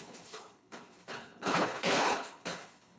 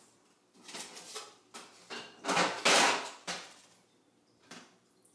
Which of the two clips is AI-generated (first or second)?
first